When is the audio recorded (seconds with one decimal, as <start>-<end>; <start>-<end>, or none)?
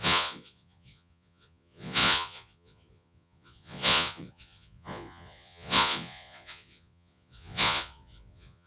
none